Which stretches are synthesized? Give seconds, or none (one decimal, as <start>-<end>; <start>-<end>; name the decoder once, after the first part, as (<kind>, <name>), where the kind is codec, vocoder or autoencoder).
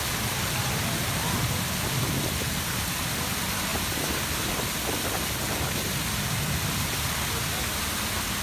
none